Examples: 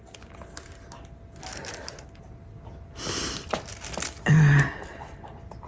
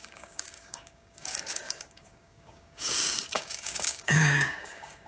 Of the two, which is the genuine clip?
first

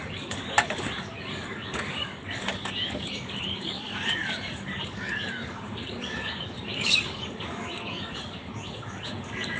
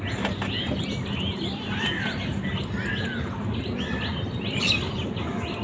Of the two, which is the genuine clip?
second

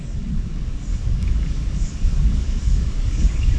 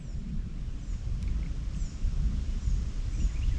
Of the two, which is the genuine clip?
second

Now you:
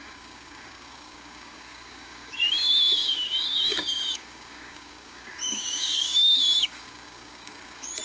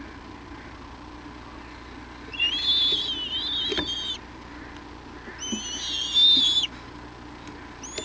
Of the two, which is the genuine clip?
second